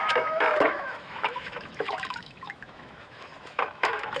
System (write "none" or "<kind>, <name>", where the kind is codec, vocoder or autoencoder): autoencoder, DAC-VAE